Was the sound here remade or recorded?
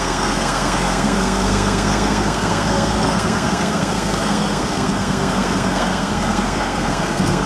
remade